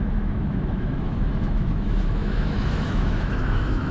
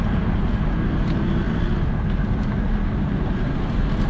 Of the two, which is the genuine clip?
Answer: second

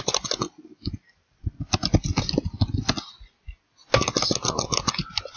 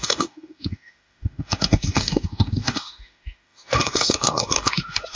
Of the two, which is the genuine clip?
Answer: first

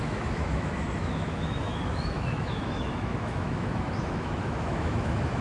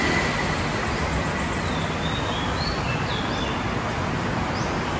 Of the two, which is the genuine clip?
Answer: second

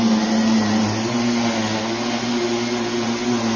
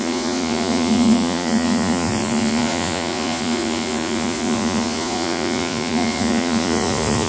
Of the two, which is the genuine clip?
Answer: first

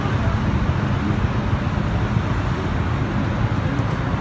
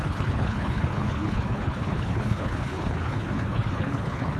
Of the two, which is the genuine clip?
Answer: first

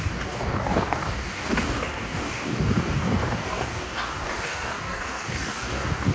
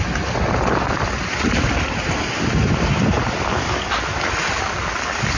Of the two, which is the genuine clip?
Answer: second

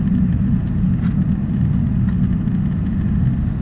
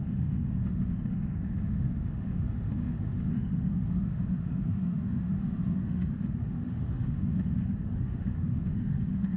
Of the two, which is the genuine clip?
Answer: first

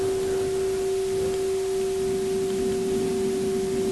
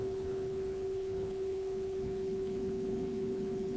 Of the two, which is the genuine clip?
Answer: first